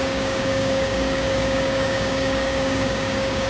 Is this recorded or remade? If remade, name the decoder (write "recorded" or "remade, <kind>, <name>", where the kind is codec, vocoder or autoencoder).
remade, codec, DAC